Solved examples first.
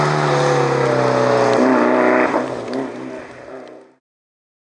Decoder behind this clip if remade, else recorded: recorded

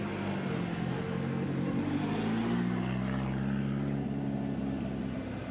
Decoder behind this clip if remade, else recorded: recorded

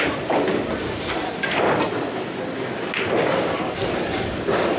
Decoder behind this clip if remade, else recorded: recorded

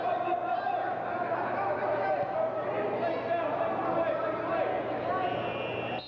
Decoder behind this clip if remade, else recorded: recorded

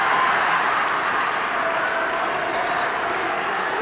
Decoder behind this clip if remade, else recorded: recorded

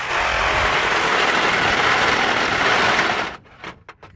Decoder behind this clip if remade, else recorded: recorded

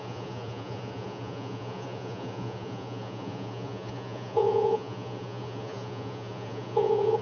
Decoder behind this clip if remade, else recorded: remade, vocoder, Vocos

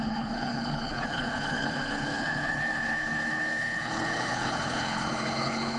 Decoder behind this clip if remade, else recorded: remade, codec, HILCodec